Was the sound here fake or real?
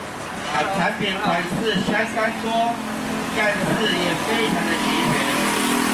real